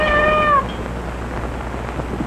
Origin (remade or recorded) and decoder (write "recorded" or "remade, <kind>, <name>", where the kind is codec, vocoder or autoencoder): recorded